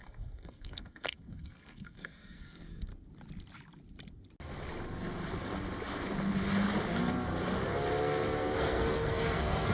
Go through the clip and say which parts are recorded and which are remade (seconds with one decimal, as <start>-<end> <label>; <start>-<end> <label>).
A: 0.0-2.9 remade; 2.9-8.0 recorded; 8.0-9.7 remade